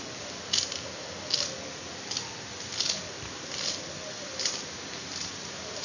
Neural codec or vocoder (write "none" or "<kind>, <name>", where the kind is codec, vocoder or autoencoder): none